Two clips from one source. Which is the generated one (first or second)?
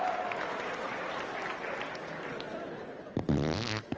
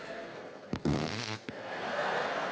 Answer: second